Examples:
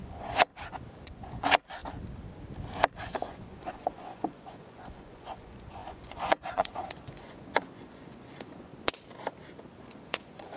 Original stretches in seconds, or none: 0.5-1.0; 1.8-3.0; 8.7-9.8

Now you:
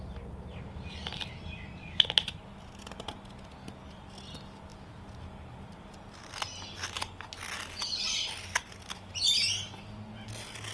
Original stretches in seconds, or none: 0.0-10.7

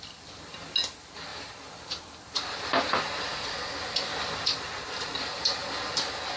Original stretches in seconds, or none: 0.0-6.4

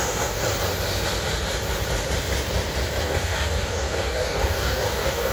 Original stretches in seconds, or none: 0.4-3.0

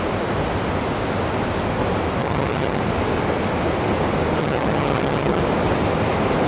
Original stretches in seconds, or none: 0.0-2.2; 2.8-4.4; 5.4-6.5

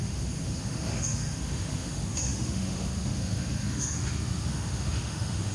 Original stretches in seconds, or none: none

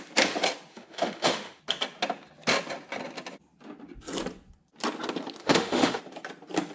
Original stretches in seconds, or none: 0.0-0.7; 1.6-5.4; 6.0-6.7